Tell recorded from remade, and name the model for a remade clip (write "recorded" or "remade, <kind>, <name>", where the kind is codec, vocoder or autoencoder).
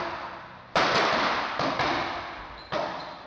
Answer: recorded